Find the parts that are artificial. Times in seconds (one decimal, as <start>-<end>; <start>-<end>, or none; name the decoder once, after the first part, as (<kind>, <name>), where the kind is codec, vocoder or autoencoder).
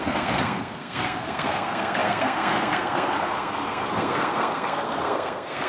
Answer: 0.0-5.7 (codec, SNAC)